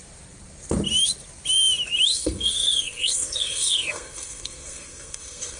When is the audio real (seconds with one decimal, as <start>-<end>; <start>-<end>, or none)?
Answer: 0.0-2.1